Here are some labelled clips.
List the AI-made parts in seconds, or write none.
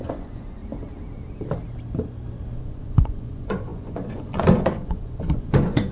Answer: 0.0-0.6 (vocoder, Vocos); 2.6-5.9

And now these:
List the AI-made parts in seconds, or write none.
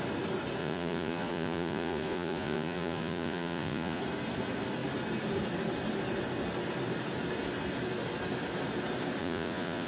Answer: 0.6-4.0 (vocoder, Vocos); 9.2-9.9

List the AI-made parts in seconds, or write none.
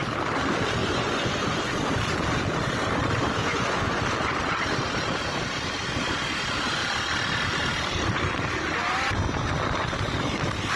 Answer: 0.8-1.7 (vocoder, Vocos); 3.4-4.0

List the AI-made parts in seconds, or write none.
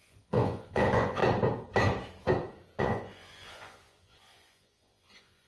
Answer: 0.0-1.2 (vocoder, Vocos); 2.8-5.5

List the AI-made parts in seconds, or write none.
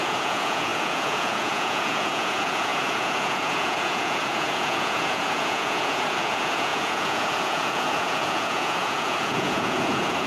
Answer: 0.0-10.3 (vocoder, Vocos)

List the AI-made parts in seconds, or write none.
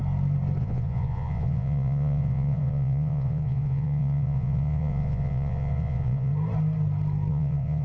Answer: 0.6-6.3 (vocoder, Vocos); 7.3-7.8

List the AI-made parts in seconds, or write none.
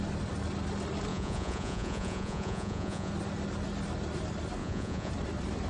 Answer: 1.1-3.1 (vocoder, Vocos); 4.6-5.1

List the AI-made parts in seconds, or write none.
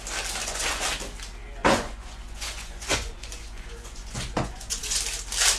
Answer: 0.4-0.9 (vocoder, Vocos); 1.6-5.0